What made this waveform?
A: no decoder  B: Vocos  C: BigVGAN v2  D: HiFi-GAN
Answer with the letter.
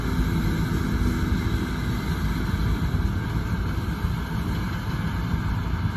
A